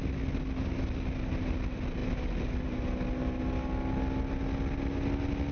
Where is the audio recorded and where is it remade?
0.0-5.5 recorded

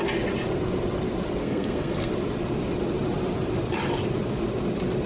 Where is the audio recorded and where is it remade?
0.0-1.4 recorded; 1.4-2.1 remade; 2.1-5.1 recorded

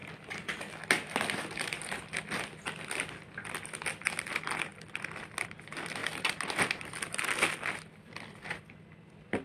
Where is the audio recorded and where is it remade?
0.0-9.4 recorded

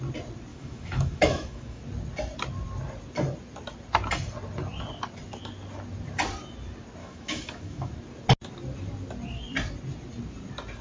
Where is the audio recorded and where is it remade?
0.0-0.5 recorded; 0.5-1.8 remade; 1.8-7.0 recorded; 7.0-7.9 remade; 7.9-10.8 recorded

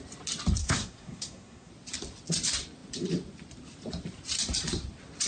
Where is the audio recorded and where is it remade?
0.0-0.6 recorded; 0.6-1.7 remade; 1.7-5.3 recorded

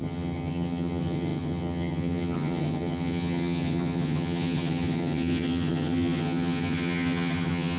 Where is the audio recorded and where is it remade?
0.0-7.8 remade

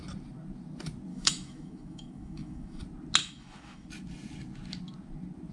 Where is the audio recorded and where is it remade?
0.0-1.1 recorded; 1.1-2.8 remade; 2.8-3.2 recorded; 3.2-3.9 remade; 3.9-5.5 recorded

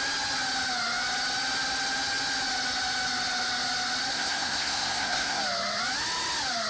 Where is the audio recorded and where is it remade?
0.0-4.1 recorded; 4.1-5.4 remade; 5.4-6.7 recorded